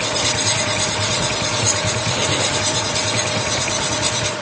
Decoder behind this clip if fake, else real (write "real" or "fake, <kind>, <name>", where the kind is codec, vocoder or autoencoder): fake, vocoder, Vocos